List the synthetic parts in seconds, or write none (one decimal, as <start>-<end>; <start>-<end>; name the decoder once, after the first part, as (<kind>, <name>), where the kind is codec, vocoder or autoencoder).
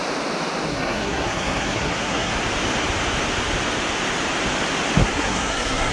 0.7-2.3 (codec, SNAC); 5.0-5.9